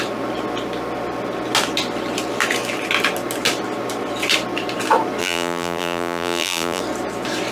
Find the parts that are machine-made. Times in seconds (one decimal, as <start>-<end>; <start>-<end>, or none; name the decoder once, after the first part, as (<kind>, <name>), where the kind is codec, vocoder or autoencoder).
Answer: 5.2-6.8 (vocoder, BigVGAN v2)